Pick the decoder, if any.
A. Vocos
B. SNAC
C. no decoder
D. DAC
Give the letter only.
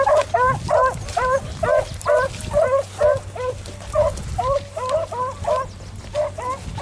C